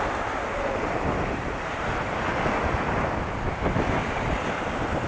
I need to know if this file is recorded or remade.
recorded